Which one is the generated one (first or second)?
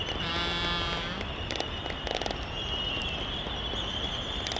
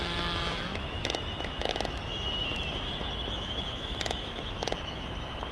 second